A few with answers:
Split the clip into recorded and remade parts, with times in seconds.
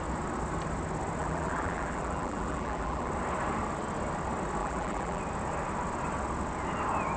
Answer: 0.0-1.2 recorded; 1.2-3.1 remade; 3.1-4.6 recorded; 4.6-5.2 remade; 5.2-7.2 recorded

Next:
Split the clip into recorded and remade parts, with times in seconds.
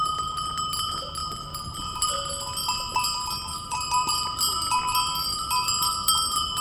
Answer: 0.0-1.2 recorded; 1.2-2.0 remade; 2.0-2.6 recorded; 2.6-6.6 remade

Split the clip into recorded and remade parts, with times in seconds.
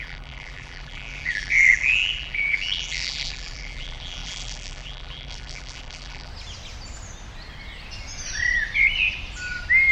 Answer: 0.0-6.3 remade; 6.3-9.9 recorded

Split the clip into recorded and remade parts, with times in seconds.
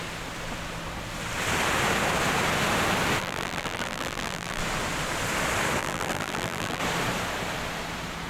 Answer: 0.0-3.2 recorded; 3.2-4.6 remade; 4.6-5.8 recorded; 5.8-6.8 remade; 6.8-8.3 recorded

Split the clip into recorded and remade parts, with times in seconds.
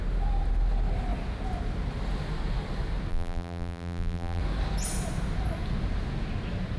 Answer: 0.0-3.1 recorded; 3.1-4.4 remade; 4.4-6.8 recorded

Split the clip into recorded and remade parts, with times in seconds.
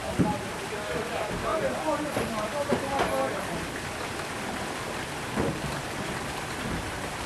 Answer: 0.0-1.1 recorded; 1.1-7.3 remade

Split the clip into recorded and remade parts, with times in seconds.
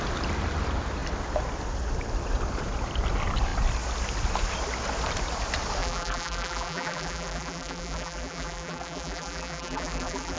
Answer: 0.0-5.8 recorded; 5.8-10.4 remade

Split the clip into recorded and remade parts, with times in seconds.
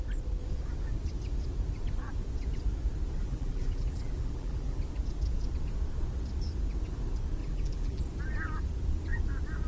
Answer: 0.0-3.2 recorded; 3.2-4.8 remade; 4.8-7.4 recorded; 7.4-8.0 remade; 8.0-9.7 recorded